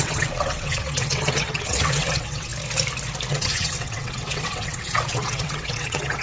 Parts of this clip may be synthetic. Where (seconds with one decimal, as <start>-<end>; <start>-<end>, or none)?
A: 0.0-2.5; 3.3-6.2